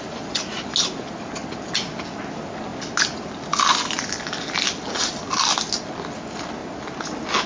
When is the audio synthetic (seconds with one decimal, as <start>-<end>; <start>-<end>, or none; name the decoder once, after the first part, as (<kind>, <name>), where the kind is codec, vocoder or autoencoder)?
none